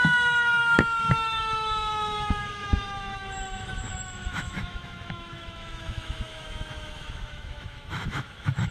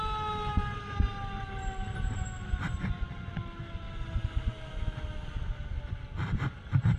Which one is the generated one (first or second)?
first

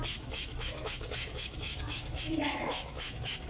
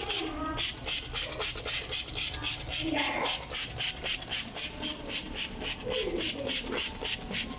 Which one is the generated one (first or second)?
first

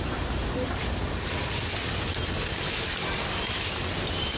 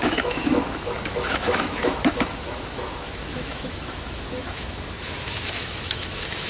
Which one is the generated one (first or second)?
second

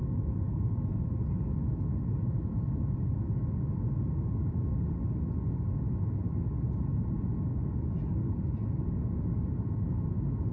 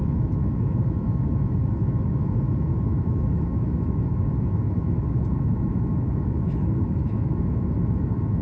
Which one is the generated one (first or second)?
second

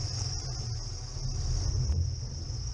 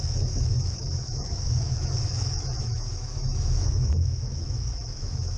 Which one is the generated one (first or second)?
second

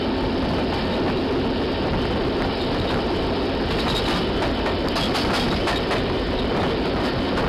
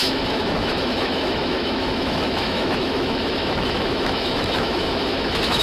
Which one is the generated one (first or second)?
second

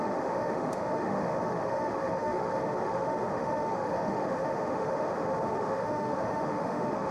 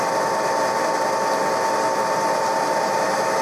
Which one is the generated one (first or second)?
first